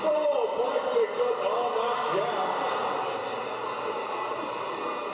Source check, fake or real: real